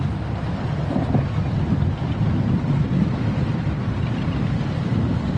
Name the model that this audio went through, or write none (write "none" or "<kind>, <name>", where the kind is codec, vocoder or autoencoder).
none